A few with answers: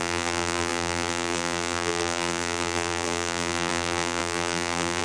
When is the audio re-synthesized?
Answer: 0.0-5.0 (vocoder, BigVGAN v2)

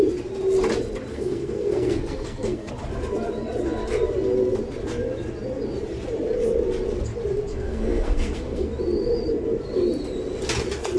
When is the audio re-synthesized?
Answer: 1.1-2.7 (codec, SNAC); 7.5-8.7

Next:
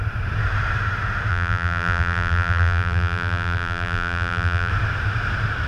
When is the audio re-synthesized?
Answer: 1.3-4.7 (vocoder, BigVGAN v2)

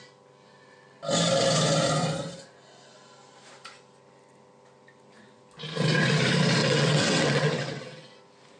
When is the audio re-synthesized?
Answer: 6.6-7.8 (vocoder, WaveNeXt)

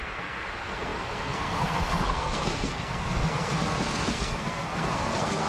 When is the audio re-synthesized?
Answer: 0.0-5.5 (codec, SNAC)

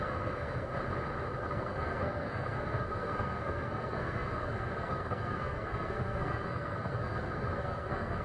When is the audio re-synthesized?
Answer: 0.0-0.7 (codec, SNAC); 1.4-8.2